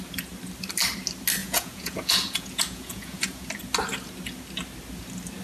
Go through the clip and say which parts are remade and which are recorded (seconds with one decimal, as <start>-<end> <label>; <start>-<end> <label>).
0.0-1.4 recorded; 1.4-3.5 remade; 3.5-5.4 recorded